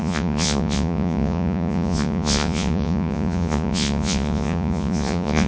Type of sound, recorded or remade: remade